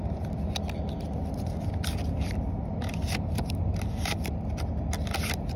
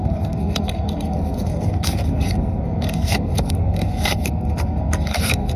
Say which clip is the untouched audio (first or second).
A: first